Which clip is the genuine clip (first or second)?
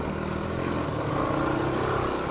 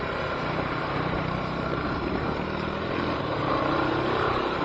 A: first